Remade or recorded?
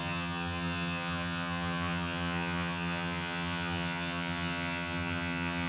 remade